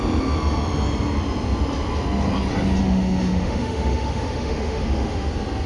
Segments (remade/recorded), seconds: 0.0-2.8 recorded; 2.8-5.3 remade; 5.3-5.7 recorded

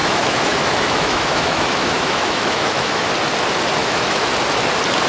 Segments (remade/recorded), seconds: 0.0-3.1 remade; 3.1-3.8 recorded; 3.8-4.3 remade; 4.3-5.1 recorded

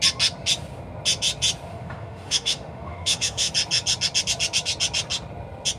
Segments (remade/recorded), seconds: 0.0-1.7 recorded; 1.7-3.5 remade; 3.5-5.8 recorded

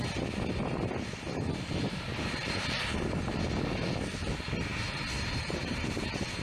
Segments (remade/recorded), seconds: 0.0-6.4 recorded